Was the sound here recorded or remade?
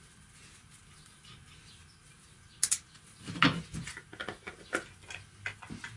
recorded